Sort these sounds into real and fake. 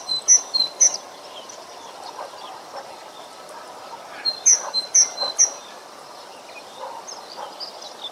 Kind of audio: real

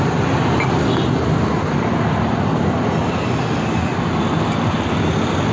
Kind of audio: real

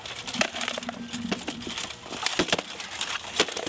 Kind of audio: real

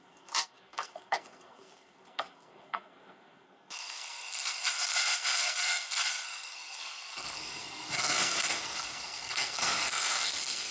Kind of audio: fake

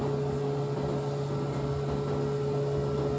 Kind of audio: real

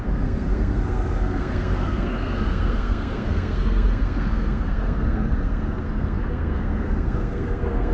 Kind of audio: fake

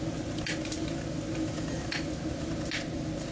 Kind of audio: real